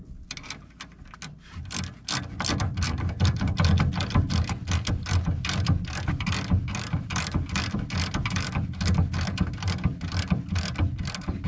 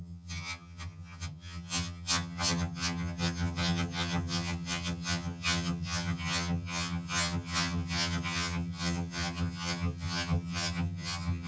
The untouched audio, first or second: first